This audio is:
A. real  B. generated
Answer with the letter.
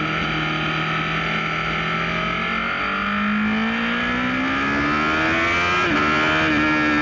A